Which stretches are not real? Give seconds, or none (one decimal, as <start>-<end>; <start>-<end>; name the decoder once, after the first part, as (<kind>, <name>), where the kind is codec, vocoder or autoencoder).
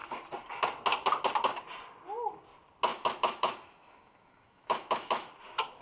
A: 2.9-5.3 (autoencoder, DAC-VAE)